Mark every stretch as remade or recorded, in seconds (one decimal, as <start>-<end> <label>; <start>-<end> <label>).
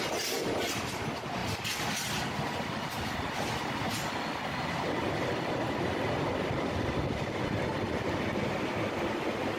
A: 0.0-9.6 recorded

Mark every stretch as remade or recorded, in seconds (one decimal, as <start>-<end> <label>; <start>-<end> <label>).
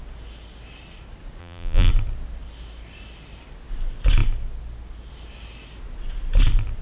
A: 0.0-1.4 recorded; 1.4-1.9 remade; 1.9-6.8 recorded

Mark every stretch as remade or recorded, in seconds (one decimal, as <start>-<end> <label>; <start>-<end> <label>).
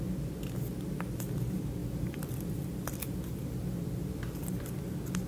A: 0.0-1.8 recorded; 1.8-4.6 remade; 4.6-5.3 recorded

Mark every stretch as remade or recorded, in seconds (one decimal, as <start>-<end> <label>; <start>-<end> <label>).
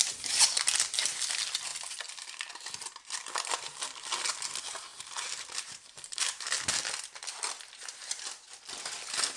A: 0.0-4.9 recorded; 4.9-6.5 remade; 6.5-9.4 recorded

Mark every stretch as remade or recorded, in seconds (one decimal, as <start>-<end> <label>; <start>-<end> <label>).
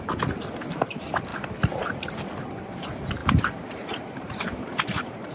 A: 0.0-3.2 recorded; 3.2-5.3 remade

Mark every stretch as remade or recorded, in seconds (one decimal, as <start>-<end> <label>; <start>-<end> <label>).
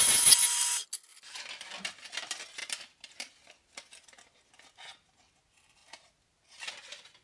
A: 0.0-2.6 recorded; 2.6-3.3 remade; 3.3-7.2 recorded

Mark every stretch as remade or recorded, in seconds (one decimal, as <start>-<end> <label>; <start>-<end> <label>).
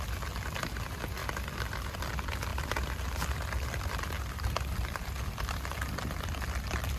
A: 0.0-1.2 recorded; 1.2-1.8 remade; 1.8-2.5 recorded; 2.5-7.0 remade